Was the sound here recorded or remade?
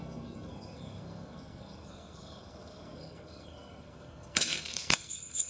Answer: remade